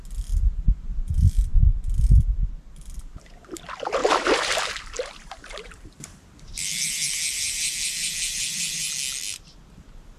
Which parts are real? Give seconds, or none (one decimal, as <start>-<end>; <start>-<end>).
0.0-4.0; 8.9-10.2